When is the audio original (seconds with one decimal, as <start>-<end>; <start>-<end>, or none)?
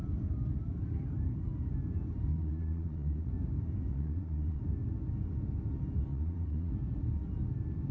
0.0-2.3; 3.3-3.9; 4.6-6.1; 6.7-7.9